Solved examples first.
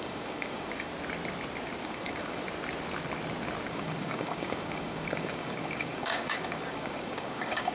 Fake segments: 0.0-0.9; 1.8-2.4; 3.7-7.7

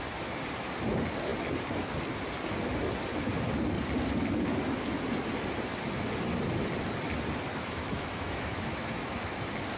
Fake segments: 7.5-9.2

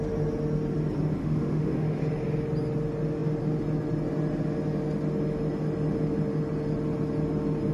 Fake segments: 1.2-2.0

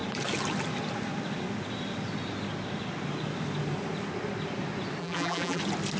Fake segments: 5.0-5.6

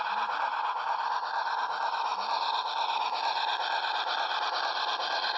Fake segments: none

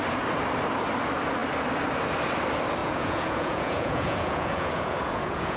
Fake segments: 2.8-5.6

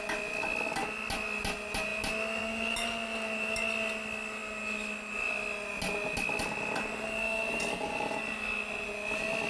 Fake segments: none

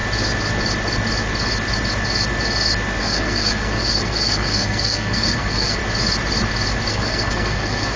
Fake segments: 3.0-5.8; 6.9-8.0